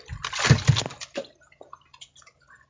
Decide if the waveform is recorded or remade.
recorded